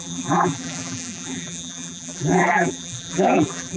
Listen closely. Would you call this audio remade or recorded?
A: remade